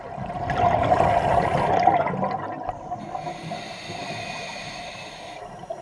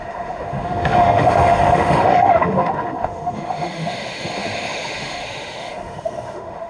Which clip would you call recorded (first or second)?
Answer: first